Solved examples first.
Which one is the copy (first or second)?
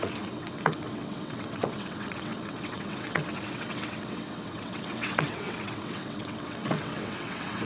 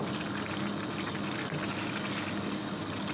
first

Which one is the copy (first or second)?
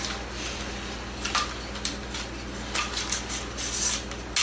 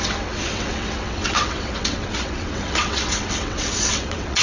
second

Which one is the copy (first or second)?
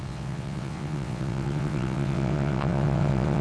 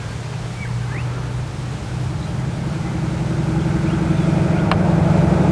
first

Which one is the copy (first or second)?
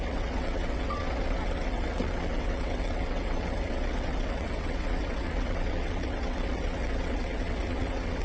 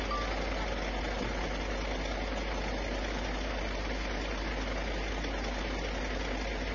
first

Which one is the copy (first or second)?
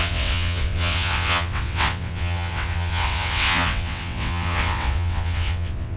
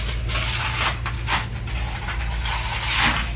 first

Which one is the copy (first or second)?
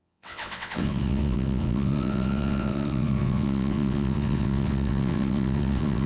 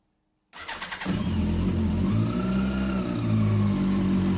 first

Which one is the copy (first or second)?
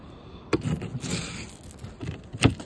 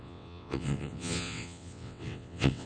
second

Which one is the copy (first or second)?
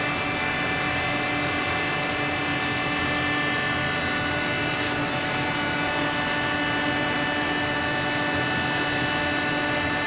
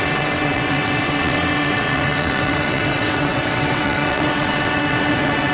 second